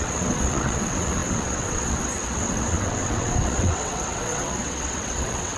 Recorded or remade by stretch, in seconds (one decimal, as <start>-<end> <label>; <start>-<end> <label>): 0.0-5.6 remade